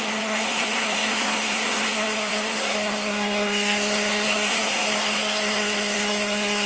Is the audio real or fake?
fake